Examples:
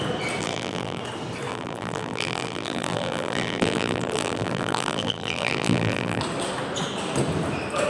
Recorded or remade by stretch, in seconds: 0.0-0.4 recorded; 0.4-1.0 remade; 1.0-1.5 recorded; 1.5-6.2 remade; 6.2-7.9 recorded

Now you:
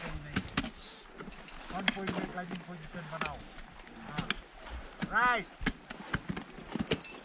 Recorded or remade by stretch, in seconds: 0.0-7.2 recorded